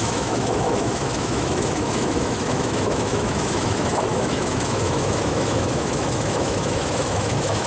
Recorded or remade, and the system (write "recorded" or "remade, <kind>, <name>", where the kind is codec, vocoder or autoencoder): remade, autoencoder, DAC-VAE